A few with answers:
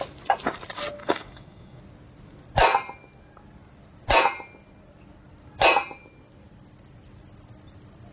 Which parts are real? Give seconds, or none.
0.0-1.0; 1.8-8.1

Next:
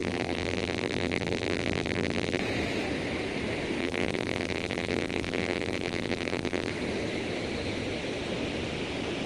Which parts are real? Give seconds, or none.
2.4-3.8; 6.7-9.3

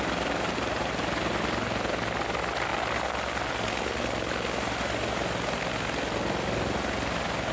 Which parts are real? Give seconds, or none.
0.0-7.5

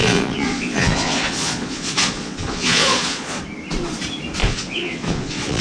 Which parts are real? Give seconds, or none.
3.4-4.4